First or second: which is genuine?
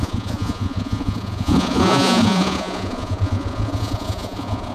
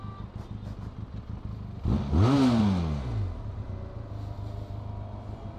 second